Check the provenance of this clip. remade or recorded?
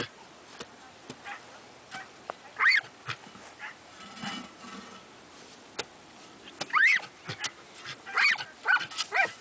recorded